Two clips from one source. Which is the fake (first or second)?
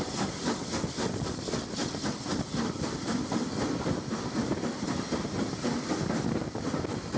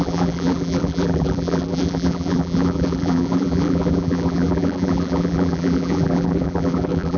second